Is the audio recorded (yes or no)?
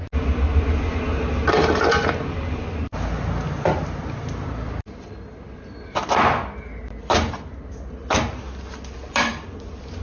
yes